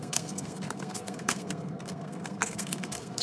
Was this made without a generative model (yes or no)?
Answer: no